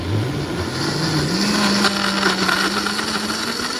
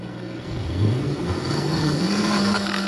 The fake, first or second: second